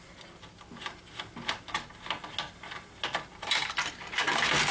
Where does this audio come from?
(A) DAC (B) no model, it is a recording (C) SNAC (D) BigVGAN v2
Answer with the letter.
B